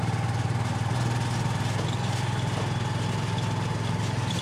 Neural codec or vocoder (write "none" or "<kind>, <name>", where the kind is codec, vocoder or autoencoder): none